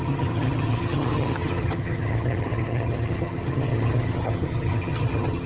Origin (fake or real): fake